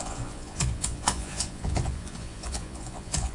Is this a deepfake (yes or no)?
yes